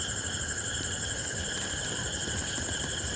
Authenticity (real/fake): real